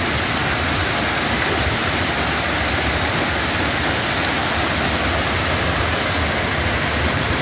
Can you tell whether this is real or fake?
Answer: real